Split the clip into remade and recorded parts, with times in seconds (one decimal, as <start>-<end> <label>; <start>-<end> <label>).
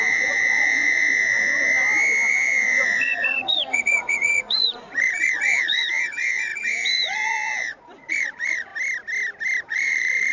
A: 0.0-1.7 remade; 1.7-2.3 recorded; 2.3-8.7 remade; 8.7-9.6 recorded; 9.6-10.3 remade